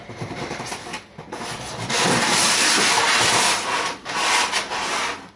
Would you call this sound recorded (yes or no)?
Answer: yes